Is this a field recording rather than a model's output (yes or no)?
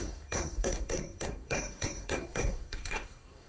no